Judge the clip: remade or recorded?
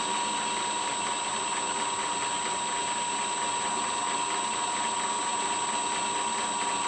recorded